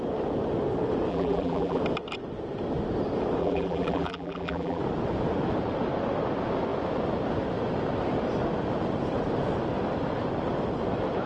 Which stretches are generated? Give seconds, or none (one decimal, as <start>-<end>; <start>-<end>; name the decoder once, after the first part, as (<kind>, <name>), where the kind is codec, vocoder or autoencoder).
1.1-1.8 (vocoder, BigVGAN v2); 3.4-4.8